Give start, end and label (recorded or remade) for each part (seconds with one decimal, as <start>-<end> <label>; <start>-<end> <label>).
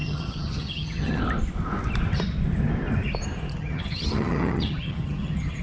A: 0.0-1.2 remade; 1.2-3.5 recorded; 3.5-5.6 remade